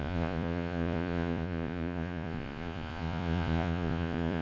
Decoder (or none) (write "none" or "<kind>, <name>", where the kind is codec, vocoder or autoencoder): vocoder, Vocos